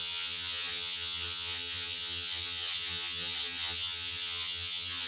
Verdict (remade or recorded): remade